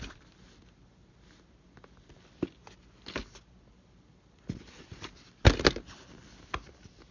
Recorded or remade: recorded